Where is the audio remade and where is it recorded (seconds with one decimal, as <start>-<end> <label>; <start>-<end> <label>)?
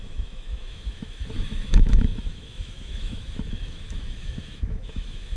0.0-5.4 remade